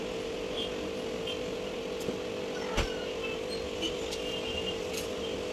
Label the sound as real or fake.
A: real